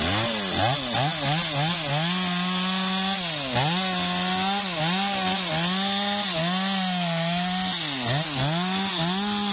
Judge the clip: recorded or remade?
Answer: recorded